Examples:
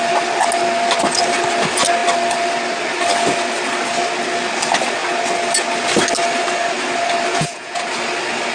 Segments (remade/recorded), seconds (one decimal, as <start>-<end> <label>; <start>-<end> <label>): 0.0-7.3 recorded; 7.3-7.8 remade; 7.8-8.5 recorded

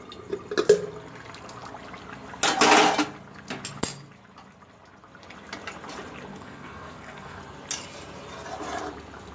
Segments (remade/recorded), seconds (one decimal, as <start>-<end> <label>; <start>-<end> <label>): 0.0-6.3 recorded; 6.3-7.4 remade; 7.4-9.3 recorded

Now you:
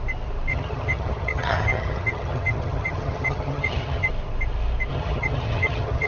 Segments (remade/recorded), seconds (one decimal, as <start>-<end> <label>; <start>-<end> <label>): 0.0-0.5 recorded; 0.5-4.1 remade; 4.1-4.9 recorded; 4.9-6.1 remade